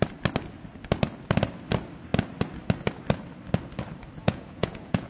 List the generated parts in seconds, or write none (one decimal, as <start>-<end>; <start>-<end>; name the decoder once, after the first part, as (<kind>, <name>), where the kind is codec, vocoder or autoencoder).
4.2-5.1 (vocoder, Vocos)